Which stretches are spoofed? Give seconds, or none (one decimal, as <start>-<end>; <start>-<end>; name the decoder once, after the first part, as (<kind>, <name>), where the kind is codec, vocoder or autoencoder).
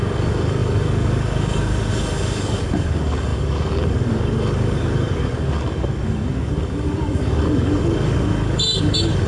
0.0-9.3 (codec, DAC)